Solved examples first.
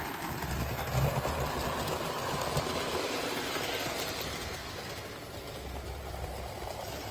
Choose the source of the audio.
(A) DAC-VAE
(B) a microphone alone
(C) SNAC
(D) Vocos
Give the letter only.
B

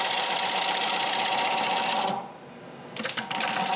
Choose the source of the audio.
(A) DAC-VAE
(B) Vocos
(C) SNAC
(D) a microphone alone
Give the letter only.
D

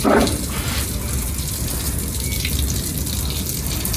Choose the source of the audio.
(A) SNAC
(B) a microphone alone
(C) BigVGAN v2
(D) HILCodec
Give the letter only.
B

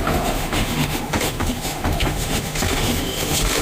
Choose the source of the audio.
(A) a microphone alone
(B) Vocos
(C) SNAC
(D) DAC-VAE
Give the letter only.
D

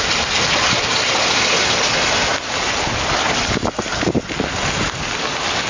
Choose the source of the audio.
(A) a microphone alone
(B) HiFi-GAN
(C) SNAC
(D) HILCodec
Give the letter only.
A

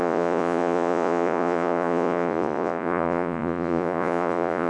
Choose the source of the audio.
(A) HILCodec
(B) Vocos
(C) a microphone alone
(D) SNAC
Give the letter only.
B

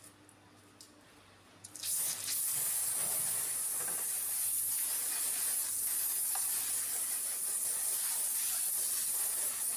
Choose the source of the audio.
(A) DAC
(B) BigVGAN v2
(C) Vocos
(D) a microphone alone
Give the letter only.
D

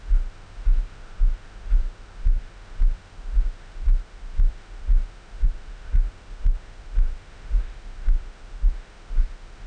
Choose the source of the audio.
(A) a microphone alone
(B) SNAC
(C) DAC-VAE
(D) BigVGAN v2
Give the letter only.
C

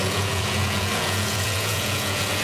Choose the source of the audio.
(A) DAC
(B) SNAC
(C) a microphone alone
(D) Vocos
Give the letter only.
D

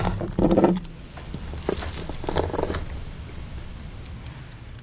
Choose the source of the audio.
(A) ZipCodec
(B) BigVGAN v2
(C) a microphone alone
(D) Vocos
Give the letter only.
B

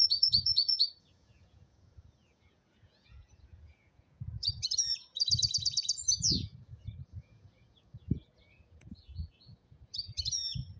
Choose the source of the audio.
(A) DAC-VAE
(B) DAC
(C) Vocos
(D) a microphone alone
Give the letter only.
C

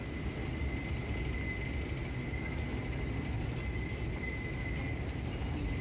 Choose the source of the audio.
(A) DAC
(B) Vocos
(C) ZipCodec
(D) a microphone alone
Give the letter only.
D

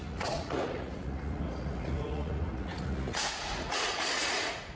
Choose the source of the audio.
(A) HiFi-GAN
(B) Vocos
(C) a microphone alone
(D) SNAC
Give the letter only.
B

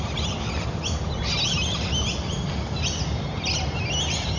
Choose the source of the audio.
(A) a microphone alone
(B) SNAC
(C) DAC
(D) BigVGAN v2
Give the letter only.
A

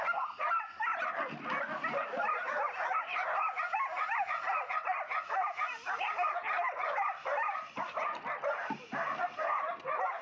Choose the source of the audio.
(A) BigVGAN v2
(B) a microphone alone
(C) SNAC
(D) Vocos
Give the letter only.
B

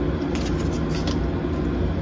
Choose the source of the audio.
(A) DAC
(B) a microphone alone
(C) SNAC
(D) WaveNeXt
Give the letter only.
B